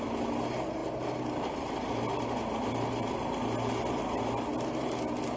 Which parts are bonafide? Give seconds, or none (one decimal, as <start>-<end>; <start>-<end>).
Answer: 0.0-5.4